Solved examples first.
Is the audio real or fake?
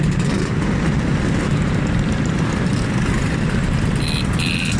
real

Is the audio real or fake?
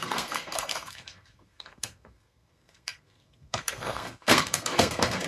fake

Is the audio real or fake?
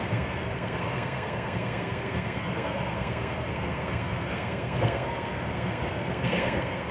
fake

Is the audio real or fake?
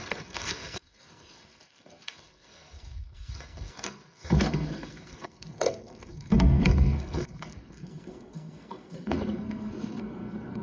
fake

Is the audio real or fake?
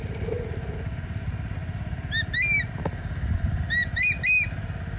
real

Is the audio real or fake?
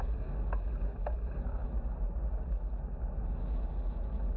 real